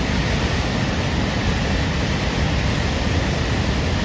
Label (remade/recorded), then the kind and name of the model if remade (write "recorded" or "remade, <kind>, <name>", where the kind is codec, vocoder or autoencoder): recorded